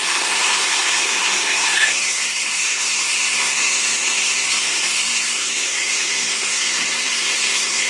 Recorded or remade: remade